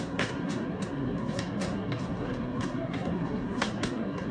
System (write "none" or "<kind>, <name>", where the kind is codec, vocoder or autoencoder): codec, SNAC